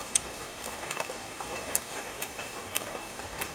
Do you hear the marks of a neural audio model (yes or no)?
yes